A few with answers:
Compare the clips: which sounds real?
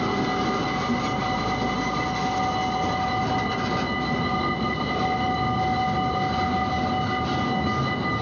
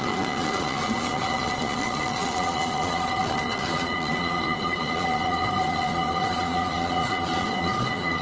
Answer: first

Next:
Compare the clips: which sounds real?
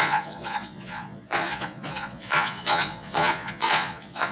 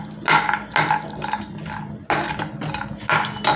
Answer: second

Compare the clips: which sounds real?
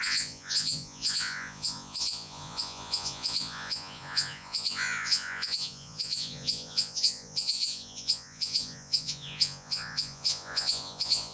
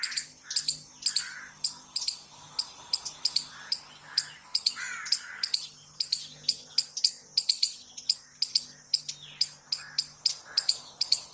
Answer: second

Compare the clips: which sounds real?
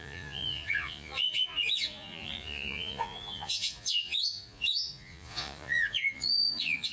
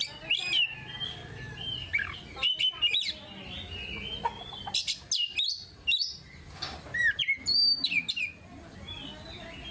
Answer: second